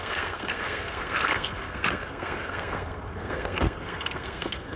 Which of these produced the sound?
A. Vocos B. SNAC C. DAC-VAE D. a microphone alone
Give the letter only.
B